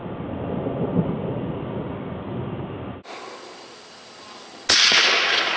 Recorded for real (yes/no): yes